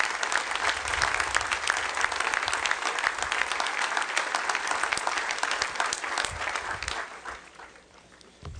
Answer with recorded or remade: recorded